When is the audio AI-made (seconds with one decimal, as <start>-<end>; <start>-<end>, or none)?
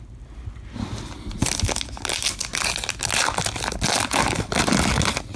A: none